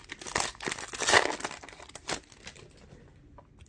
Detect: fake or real real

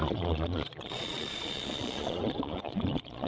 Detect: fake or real fake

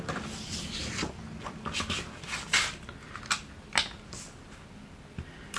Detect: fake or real real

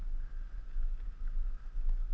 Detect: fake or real real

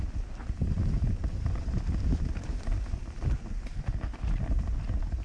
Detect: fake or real real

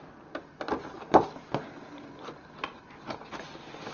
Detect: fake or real real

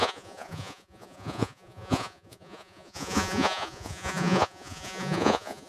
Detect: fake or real fake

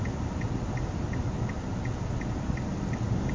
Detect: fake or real real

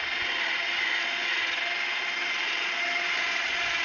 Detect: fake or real real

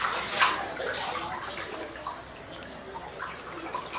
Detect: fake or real real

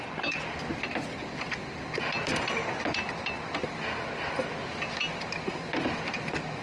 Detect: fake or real real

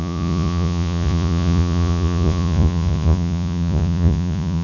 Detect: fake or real fake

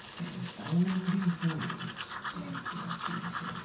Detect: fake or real real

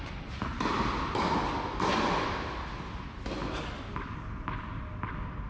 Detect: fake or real real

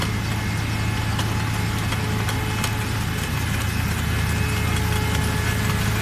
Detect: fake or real real